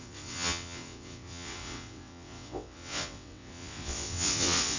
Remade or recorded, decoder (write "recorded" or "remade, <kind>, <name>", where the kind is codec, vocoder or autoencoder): remade, vocoder, WaveNeXt